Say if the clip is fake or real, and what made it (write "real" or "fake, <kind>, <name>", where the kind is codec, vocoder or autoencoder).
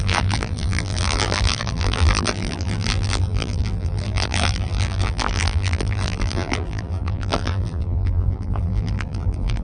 fake, vocoder, BigVGAN v2